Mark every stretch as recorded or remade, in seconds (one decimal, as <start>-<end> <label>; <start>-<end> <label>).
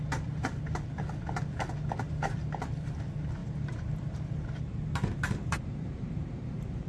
0.0-3.4 recorded; 3.4-6.9 remade